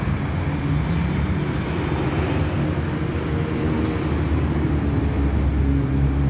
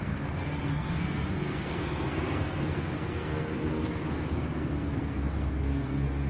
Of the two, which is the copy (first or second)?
second